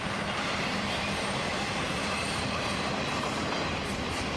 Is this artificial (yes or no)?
yes